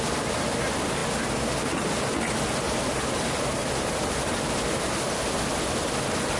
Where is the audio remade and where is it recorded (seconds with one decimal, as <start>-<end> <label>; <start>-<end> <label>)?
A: 0.0-6.4 recorded